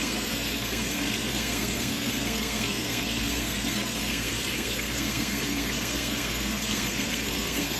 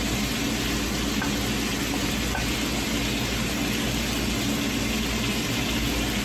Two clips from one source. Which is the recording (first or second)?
second